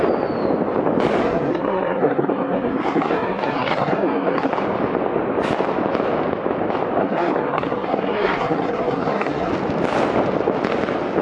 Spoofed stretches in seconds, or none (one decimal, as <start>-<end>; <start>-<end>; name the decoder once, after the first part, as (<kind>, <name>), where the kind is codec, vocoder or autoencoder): 1.2-4.5 (codec, SNAC); 7.0-9.5